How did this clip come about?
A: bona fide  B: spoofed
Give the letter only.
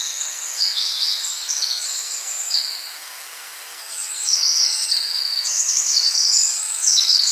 B